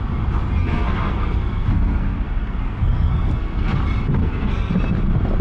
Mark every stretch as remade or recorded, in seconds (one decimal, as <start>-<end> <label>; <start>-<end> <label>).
0.0-0.6 recorded; 0.6-3.8 remade; 3.8-4.2 recorded; 4.2-4.7 remade; 4.7-5.4 recorded